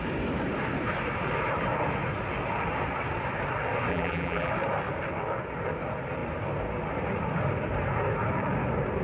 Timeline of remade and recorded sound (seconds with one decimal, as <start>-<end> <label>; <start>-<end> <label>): 0.0-3.9 recorded; 3.9-4.5 remade; 4.5-9.0 recorded